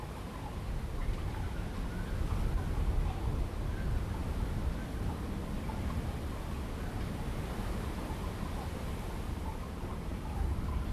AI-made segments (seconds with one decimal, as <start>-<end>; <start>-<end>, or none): none